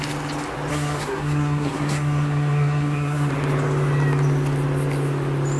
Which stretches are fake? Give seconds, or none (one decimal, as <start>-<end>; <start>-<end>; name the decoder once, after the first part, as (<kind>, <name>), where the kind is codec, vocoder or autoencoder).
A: 0.7-3.3 (codec, SNAC)